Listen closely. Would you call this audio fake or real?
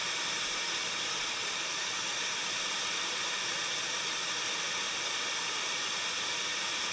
fake